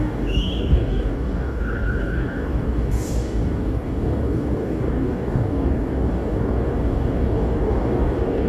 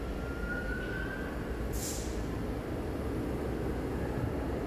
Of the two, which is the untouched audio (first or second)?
second